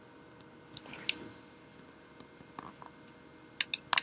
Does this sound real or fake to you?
real